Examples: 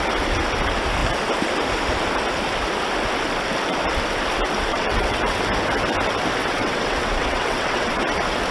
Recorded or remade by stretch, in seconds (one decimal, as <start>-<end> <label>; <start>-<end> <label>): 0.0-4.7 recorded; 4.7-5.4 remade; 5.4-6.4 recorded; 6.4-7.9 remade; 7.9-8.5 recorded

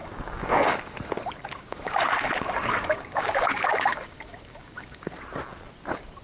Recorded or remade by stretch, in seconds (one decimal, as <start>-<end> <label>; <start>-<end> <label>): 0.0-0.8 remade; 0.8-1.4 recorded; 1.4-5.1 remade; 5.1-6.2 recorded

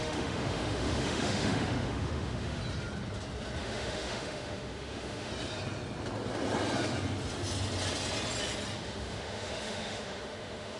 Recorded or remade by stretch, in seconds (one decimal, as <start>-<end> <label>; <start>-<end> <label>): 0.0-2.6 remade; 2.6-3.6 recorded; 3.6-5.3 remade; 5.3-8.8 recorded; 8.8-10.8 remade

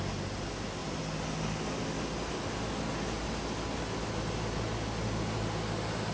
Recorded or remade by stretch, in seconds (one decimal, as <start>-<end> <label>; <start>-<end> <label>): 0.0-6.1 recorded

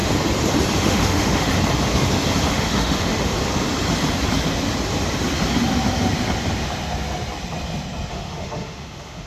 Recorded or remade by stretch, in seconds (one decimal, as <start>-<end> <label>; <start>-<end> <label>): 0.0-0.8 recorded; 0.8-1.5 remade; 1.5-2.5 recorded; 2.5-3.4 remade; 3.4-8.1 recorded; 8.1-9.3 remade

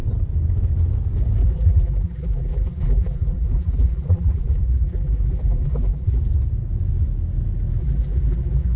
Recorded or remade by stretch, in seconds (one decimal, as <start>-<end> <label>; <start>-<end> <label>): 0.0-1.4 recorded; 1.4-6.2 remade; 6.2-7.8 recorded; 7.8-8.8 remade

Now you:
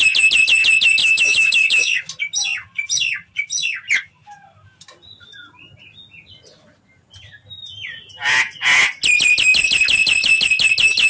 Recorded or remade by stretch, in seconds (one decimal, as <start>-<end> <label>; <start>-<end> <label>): 0.0-1.0 recorded; 1.0-2.0 remade; 2.0-11.1 recorded